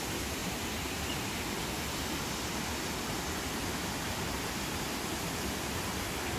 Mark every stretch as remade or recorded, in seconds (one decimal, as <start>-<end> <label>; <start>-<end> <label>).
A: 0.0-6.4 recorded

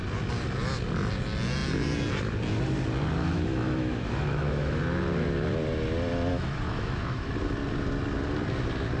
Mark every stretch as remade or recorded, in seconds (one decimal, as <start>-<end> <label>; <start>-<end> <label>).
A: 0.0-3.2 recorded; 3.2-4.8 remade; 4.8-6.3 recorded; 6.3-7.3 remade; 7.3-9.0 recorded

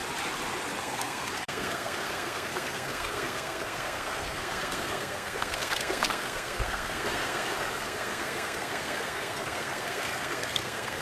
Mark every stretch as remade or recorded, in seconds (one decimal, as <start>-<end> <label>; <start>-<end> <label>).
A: 0.0-0.8 recorded; 0.8-11.0 remade

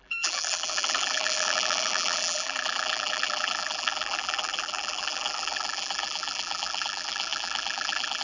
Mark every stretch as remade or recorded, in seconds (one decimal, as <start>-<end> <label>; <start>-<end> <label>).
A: 0.0-8.2 remade

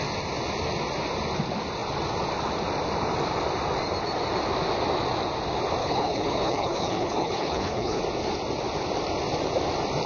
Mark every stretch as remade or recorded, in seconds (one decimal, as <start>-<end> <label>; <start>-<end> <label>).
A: 0.0-5.8 recorded; 5.8-8.0 remade; 8.0-10.1 recorded